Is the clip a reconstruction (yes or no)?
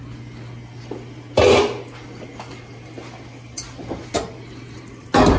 no